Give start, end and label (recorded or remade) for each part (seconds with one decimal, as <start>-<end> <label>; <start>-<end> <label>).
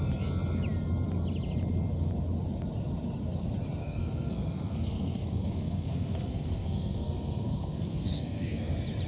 0.0-3.8 recorded; 3.8-8.7 remade; 8.7-9.1 recorded